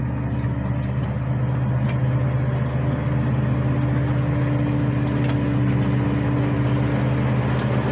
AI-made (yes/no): no